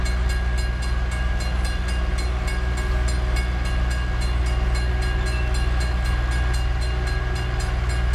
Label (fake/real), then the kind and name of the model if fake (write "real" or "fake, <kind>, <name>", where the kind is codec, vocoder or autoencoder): real